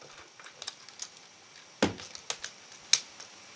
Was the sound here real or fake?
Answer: real